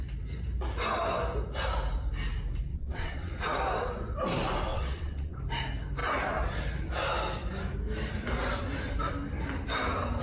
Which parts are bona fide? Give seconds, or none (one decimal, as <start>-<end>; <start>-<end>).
0.0-2.7; 3.3-4.7; 5.4-10.2